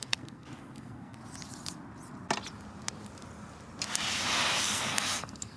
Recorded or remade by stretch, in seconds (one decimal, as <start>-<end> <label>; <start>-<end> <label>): 0.0-1.2 remade; 1.2-4.6 recorded; 4.6-5.6 remade